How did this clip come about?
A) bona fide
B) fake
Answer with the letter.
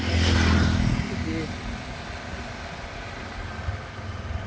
A